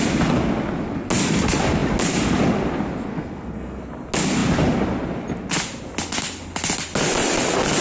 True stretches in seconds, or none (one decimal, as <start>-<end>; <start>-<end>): 0.0-3.1; 3.8-7.8